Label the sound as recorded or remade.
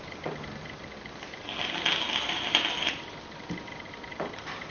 recorded